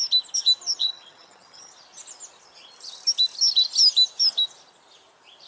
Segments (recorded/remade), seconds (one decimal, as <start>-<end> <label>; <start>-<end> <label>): 0.0-0.8 recorded; 0.8-1.7 remade; 1.7-5.5 recorded